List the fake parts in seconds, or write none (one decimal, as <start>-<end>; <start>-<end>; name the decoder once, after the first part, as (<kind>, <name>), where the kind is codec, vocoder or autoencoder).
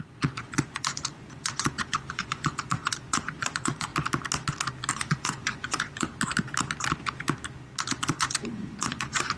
0.0-3.9 (vocoder, Vocos); 4.9-6.1; 7.8-9.4